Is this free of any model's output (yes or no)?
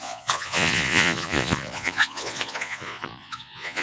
no